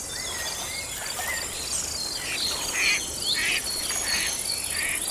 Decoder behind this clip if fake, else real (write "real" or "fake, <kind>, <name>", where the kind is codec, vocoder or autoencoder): real